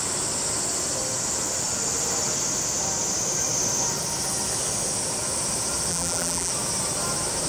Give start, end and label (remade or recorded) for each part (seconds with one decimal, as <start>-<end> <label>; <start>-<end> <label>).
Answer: 0.0-5.9 recorded; 5.9-6.5 remade; 6.5-7.5 recorded

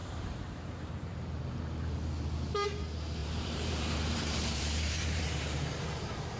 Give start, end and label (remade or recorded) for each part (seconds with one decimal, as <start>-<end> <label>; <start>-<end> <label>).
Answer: 0.0-1.6 remade; 1.6-3.2 recorded; 3.2-5.2 remade; 5.2-6.4 recorded